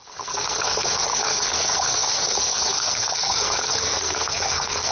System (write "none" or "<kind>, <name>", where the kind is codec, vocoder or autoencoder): codec, SNAC